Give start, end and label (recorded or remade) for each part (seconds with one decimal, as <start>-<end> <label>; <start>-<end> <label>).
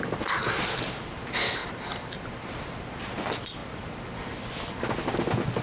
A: 0.0-1.6 recorded; 1.6-2.1 remade; 2.1-5.6 recorded